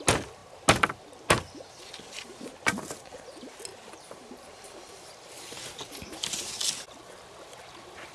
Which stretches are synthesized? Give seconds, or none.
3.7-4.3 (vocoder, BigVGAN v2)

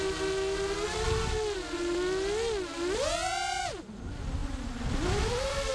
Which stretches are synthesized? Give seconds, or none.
none

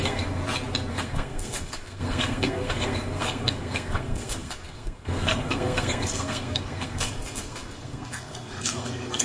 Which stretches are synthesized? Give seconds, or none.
0.0-0.4 (codec, SNAC); 0.9-9.2

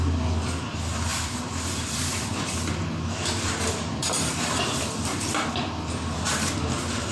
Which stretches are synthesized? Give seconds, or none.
1.1-5.4 (vocoder, BigVGAN v2)

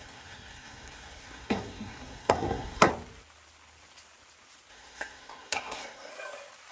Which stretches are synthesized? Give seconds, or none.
0.0-2.9 (codec, SNAC); 4.7-6.1

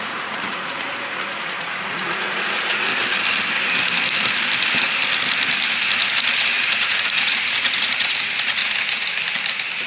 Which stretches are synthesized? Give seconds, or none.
0.0-2.9 (vocoder, Vocos); 6.5-8.6

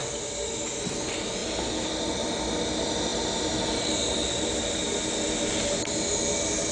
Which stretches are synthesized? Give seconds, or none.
none

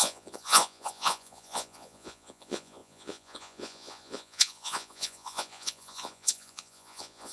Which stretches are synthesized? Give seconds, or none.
0.0-7.3 (vocoder, Vocos)